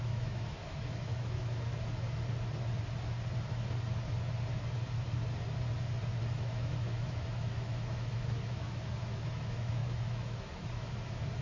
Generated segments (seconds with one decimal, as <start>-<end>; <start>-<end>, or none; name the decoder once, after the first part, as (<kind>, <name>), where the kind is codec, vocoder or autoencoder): 0.0-1.7 (autoencoder, DAC-VAE); 6.3-11.4